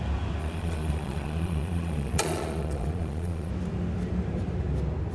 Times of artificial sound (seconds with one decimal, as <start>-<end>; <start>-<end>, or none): 0.4-3.5